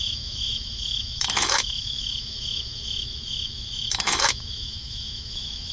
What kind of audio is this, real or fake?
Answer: fake